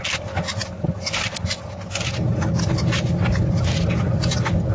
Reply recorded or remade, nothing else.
recorded